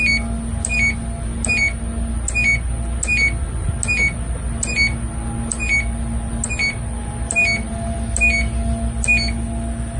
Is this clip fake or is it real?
real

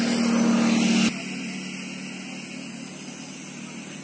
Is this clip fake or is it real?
real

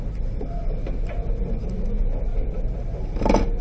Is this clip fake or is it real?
real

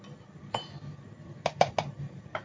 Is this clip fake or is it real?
real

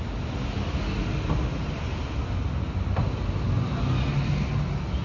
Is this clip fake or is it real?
real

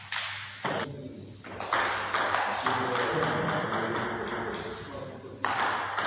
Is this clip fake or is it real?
real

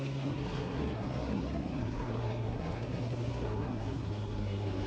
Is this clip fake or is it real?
fake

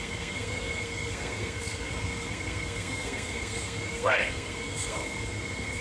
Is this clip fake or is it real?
fake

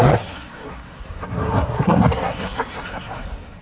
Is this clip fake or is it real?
fake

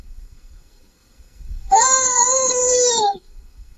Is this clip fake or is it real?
fake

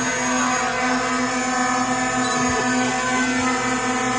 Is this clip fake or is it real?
real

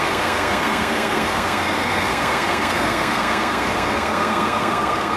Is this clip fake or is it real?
fake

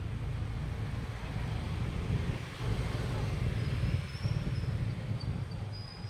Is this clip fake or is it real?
real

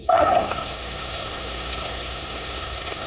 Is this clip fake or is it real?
fake